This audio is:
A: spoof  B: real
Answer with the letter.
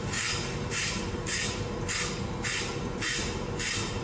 A